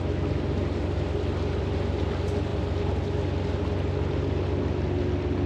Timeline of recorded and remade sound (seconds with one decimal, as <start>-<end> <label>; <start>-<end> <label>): 0.0-5.5 recorded